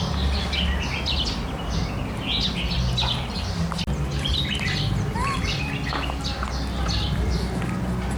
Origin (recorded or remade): recorded